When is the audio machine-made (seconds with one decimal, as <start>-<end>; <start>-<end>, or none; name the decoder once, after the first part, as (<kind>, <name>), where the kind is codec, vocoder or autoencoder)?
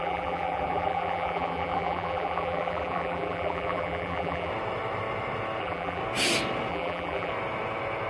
0.0-4.5 (vocoder, BigVGAN v2); 5.6-6.0; 6.7-7.3